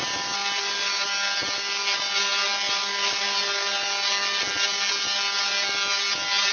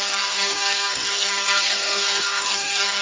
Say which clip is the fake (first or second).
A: second